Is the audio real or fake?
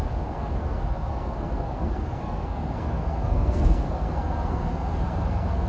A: fake